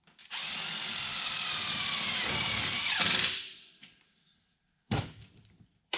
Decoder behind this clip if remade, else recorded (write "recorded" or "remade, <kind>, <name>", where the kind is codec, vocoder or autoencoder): remade, vocoder, BigVGAN v2